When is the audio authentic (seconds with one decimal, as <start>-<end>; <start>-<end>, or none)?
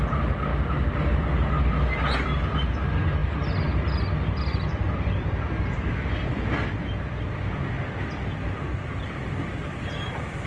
0.0-10.5